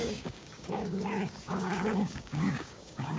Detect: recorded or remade remade